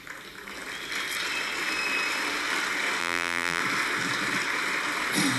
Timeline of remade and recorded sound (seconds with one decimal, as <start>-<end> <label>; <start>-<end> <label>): 0.0-3.0 recorded; 3.0-3.6 remade; 3.6-5.4 recorded